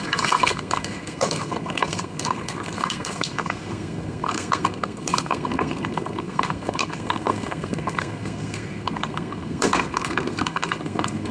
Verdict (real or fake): fake